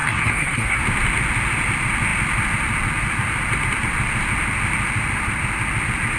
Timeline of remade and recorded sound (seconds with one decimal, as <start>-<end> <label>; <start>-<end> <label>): 0.0-0.8 remade; 0.8-6.2 recorded